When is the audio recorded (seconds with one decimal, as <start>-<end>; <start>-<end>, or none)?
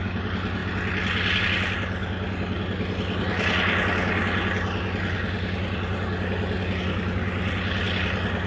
0.0-8.5